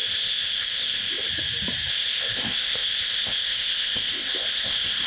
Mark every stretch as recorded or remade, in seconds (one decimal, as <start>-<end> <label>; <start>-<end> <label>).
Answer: 0.0-1.3 remade; 1.3-1.9 recorded; 1.9-5.1 remade

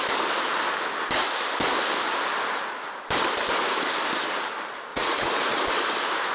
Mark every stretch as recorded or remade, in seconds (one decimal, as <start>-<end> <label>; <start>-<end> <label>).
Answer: 0.0-4.9 recorded; 4.9-5.6 remade; 5.6-6.3 recorded

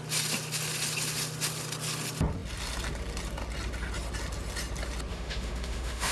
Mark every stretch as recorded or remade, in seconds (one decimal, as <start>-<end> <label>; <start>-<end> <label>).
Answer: 0.0-5.1 recorded; 5.1-6.1 remade

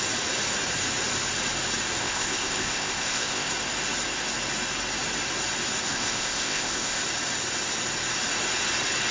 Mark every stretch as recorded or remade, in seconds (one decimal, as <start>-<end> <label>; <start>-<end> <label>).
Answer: 0.0-2.0 recorded; 2.0-3.5 remade; 3.5-5.9 recorded; 5.9-7.0 remade; 7.0-9.1 recorded

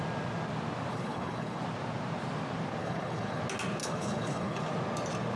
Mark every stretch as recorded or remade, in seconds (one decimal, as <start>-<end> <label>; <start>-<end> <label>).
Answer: 0.0-0.9 recorded; 0.9-1.6 remade; 1.6-2.8 recorded; 2.8-3.4 remade; 3.4-3.8 recorded; 3.8-4.6 remade; 4.6-5.4 recorded

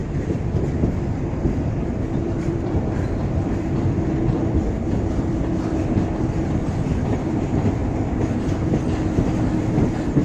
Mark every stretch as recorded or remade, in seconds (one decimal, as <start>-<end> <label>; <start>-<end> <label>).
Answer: 0.0-0.8 recorded; 0.8-7.8 remade; 7.8-9.6 recorded; 9.6-10.2 remade

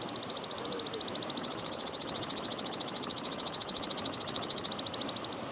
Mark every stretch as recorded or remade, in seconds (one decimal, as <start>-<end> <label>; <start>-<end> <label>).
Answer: 0.0-1.4 recorded; 1.4-4.7 remade; 4.7-5.5 recorded

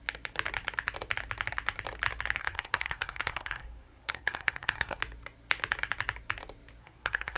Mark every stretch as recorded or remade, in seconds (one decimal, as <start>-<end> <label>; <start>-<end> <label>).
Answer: 0.0-2.4 recorded; 2.4-5.0 remade; 5.0-6.8 recorded; 6.8-7.4 remade